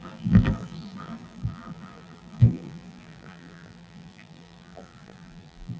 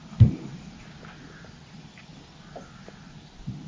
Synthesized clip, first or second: first